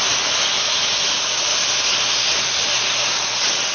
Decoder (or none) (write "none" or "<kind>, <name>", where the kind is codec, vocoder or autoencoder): none